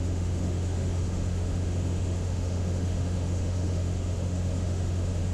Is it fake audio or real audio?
fake